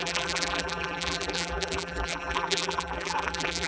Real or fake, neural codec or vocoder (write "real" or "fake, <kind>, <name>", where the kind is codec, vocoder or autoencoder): fake, vocoder, BigVGAN v2